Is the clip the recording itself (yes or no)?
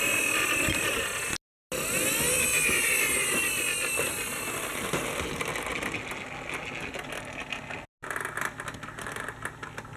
yes